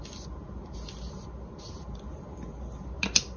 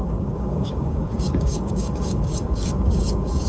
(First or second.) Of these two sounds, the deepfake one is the second